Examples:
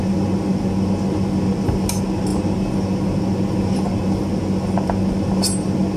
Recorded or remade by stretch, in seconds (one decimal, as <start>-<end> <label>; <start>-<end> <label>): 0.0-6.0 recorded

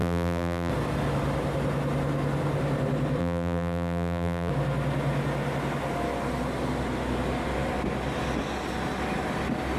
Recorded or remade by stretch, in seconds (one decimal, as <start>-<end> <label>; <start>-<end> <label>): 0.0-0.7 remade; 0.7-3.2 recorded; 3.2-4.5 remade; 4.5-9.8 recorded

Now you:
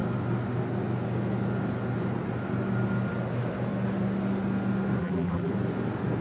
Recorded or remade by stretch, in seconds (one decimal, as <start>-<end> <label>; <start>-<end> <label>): 0.0-5.0 recorded; 5.0-5.5 remade; 5.5-6.2 recorded

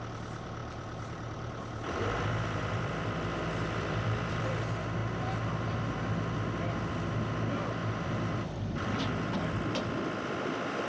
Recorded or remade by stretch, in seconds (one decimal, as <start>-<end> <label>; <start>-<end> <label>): 0.0-0.6 recorded; 0.6-4.4 remade; 4.4-7.8 recorded; 7.8-9.0 remade; 9.0-10.9 recorded

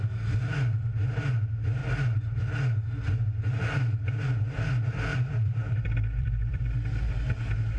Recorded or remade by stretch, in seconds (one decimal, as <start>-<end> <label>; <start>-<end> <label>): 0.0-1.8 recorded; 1.8-2.5 remade; 2.5-5.1 recorded; 5.1-6.6 remade; 6.6-7.8 recorded

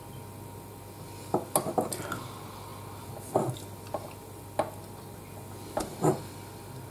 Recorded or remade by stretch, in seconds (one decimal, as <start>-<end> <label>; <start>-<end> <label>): 0.0-6.9 recorded